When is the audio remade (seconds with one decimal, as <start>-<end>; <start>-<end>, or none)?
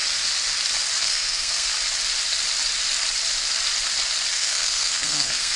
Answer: 1.0-1.7; 4.3-5.6